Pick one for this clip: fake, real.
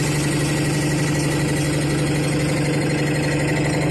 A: real